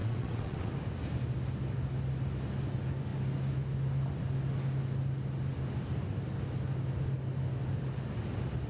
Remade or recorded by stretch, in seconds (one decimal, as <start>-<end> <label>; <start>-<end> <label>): 0.0-0.7 remade; 0.7-8.7 recorded